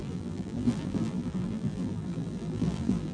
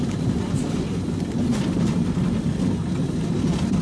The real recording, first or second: second